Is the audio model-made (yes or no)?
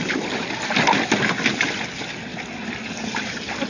no